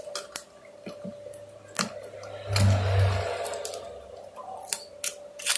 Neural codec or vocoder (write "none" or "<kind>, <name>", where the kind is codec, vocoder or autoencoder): none